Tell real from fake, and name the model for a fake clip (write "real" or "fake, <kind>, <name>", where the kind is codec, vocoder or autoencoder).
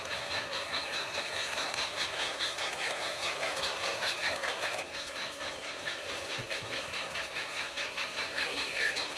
fake, codec, SNAC